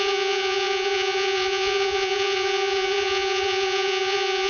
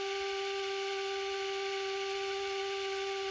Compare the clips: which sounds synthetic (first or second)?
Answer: first